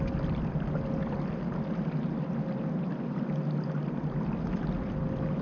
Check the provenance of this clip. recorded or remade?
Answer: recorded